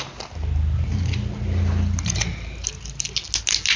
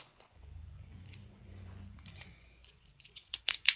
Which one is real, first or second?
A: first